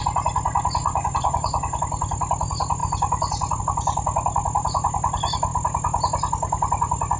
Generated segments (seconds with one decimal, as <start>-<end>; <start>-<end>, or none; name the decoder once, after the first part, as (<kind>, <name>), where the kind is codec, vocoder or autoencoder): 0.8-1.8 (vocoder, Vocos)

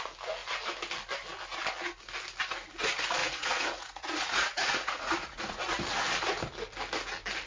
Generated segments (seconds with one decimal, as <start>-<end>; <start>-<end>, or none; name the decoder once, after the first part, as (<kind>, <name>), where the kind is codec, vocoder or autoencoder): 3.2-5.8 (vocoder, Vocos)

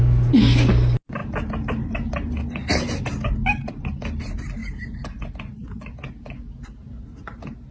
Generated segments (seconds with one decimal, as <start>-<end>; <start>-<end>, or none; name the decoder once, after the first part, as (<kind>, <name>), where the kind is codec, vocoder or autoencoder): none

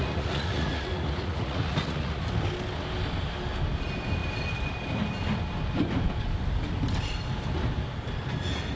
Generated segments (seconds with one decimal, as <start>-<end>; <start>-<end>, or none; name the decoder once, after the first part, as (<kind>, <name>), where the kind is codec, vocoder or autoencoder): 0.0-2.2 (vocoder, Vocos)

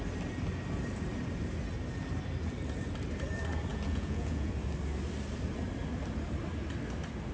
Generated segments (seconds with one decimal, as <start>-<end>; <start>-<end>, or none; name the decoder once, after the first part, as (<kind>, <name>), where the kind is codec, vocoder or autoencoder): 3.7-4.5 (vocoder, Vocos)